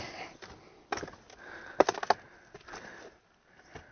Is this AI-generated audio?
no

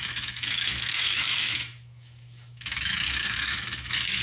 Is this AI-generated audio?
yes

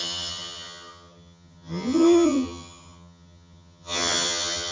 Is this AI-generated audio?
yes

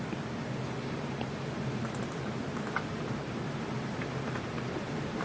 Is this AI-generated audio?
yes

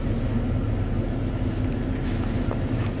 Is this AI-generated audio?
no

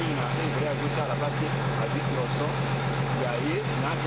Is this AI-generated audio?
yes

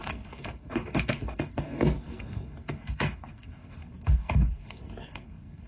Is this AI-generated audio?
yes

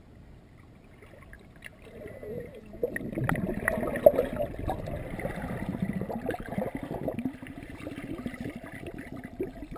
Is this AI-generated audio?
no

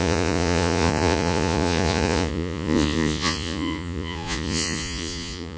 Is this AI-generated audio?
yes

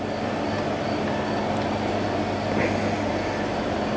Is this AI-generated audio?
no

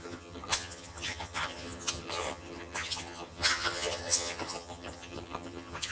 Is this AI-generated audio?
yes